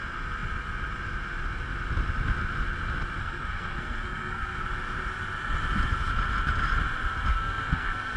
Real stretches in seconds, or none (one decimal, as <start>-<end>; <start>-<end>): 0.0-3.2; 4.6-7.3